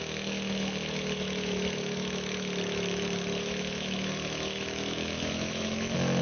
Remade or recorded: remade